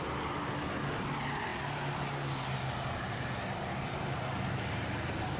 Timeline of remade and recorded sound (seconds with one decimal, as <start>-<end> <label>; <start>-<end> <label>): 0.0-5.4 recorded